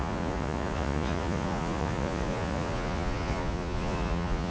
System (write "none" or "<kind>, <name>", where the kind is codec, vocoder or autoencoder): vocoder, Vocos